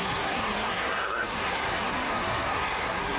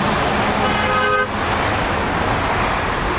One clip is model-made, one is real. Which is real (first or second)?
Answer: second